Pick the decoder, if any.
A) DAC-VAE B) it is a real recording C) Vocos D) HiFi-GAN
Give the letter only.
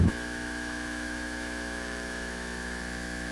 A